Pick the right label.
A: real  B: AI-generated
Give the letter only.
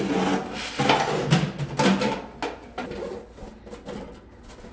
A